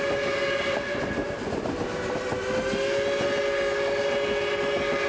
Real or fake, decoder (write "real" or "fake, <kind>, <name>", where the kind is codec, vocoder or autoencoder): real